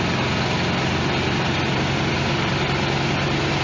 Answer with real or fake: real